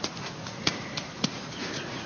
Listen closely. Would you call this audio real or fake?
fake